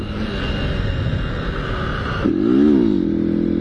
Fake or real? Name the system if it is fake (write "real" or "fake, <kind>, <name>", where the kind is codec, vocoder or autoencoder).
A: real